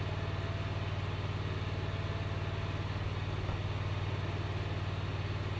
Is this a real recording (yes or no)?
yes